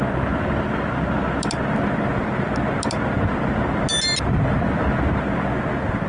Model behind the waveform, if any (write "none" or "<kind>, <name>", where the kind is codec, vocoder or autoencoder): none